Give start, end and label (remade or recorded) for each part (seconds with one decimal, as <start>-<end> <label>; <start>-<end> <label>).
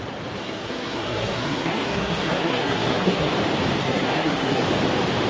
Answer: 0.0-0.4 recorded; 0.4-3.3 remade; 3.3-3.8 recorded; 3.8-4.6 remade; 4.6-5.3 recorded